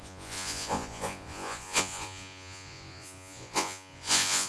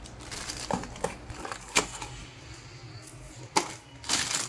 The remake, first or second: first